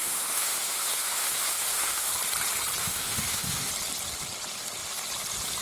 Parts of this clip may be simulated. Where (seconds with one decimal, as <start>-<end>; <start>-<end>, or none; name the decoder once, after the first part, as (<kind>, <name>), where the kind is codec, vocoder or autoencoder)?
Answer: 0.0-2.1 (autoencoder, DAC-VAE); 2.8-3.7